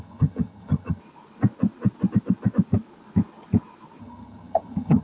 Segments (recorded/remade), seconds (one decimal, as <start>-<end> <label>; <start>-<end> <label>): 0.0-1.0 remade; 1.0-4.0 recorded; 4.0-5.0 remade